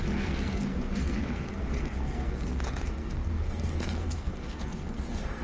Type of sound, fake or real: fake